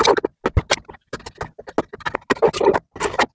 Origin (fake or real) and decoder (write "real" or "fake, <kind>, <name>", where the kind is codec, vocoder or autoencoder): real